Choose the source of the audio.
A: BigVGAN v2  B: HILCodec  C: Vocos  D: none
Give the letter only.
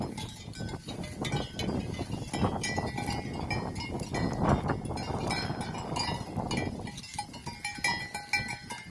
D